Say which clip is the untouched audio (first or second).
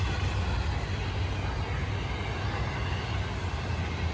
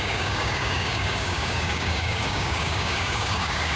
first